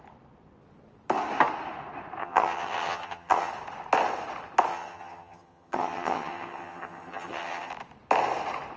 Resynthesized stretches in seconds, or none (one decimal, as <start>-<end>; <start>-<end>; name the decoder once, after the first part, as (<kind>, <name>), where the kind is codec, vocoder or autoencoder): 2.2-3.5 (vocoder, HiFi-GAN); 4.7-7.7